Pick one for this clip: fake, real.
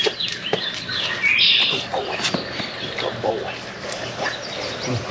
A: real